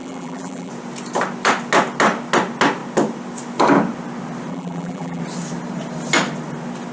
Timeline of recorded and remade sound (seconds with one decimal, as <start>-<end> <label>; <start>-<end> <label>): 0.0-0.7 remade; 0.7-4.5 recorded; 4.5-5.2 remade; 5.2-6.9 recorded